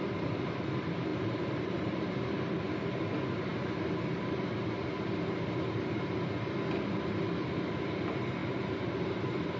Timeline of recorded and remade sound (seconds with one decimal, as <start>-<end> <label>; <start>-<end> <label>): 0.0-1.1 recorded; 1.1-2.1 remade; 2.1-8.4 recorded; 8.4-9.1 remade; 9.1-9.6 recorded

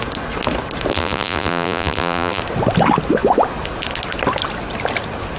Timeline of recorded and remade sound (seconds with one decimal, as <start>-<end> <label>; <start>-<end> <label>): 0.0-0.9 recorded; 0.9-2.4 remade; 2.4-5.4 recorded